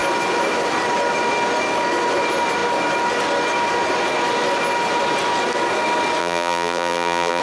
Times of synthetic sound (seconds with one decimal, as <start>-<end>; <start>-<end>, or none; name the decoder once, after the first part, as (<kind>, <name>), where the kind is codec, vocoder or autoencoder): 6.2-7.4 (vocoder, BigVGAN v2)